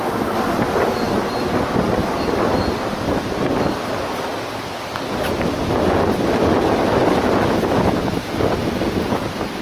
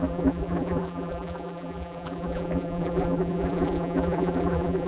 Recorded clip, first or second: first